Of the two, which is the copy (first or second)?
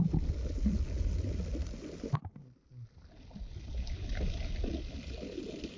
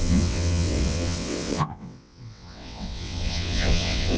second